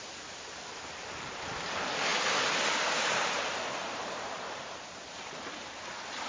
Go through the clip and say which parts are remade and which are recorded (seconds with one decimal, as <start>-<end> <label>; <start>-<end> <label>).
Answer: 0.0-3.8 recorded; 3.8-6.3 remade